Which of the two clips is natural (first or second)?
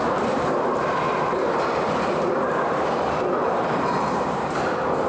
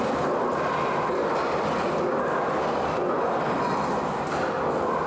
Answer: second